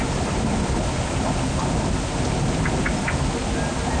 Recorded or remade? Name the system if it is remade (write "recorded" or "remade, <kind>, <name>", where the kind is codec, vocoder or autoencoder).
recorded